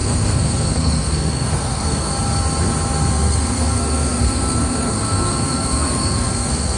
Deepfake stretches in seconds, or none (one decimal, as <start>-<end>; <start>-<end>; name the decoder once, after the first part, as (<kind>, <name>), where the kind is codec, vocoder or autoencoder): 0.0-2.1 (codec, SNAC); 3.1-6.8

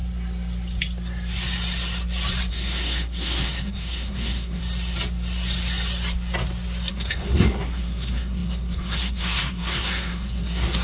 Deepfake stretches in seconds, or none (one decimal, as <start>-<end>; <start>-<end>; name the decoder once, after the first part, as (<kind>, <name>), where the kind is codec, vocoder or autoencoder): 2.5-4.6 (codec, SNAC); 6.9-10.8

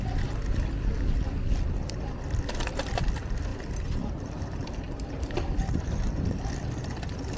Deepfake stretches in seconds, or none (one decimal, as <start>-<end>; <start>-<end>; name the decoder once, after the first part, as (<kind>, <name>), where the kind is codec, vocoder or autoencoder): 3.5-6.5 (vocoder, BigVGAN v2)

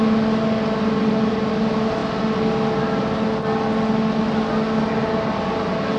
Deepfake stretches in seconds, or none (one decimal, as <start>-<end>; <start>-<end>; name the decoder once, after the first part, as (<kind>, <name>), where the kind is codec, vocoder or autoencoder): none

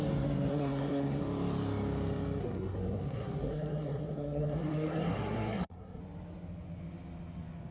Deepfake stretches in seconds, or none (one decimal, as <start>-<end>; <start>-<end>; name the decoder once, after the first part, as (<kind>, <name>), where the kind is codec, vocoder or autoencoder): 0.5-1.2 (codec, SNAC); 2.4-6.0

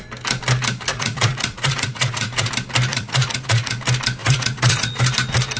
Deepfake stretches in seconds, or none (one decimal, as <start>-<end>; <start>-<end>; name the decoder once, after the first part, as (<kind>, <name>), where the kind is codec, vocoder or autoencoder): 0.9-2.5 (vocoder, Vocos); 2.9-3.8; 4.2-5.0

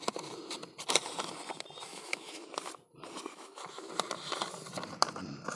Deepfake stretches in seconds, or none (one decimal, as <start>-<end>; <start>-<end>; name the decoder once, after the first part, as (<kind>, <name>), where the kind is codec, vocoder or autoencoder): 1.9-2.5 (autoencoder, DAC-VAE); 3.3-3.9

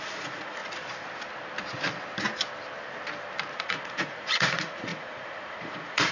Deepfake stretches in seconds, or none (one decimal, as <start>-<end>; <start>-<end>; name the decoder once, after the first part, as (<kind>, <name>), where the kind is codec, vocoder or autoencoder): 0.0-0.6 (vocoder, Vocos); 3.6-6.1